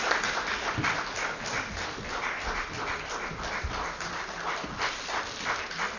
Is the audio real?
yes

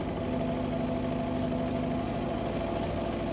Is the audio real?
yes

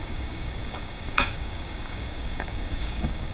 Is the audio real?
no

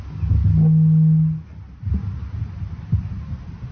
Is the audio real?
yes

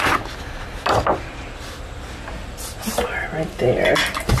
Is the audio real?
yes